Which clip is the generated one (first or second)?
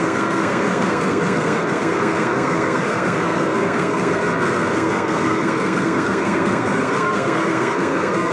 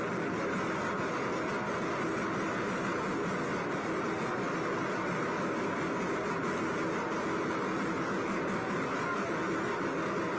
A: first